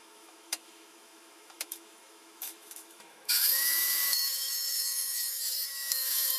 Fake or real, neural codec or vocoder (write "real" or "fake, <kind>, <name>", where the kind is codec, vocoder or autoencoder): fake, autoencoder, DAC-VAE